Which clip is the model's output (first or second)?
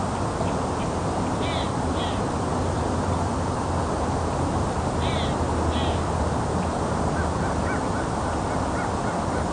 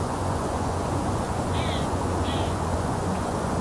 second